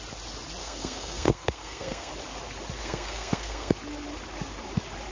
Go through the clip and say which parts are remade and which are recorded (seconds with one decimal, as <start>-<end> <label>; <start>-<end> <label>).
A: 0.0-0.6 recorded; 0.6-2.1 remade; 2.1-2.8 recorded; 2.8-3.7 remade; 3.7-5.1 recorded